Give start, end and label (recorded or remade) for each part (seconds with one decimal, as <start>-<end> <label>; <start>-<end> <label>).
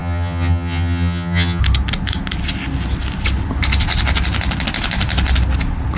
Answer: 0.0-1.6 remade; 1.6-6.0 recorded